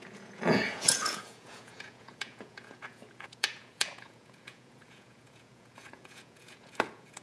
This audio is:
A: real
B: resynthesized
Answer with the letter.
B